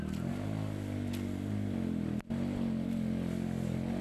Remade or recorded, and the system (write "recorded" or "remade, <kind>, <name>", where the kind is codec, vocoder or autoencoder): recorded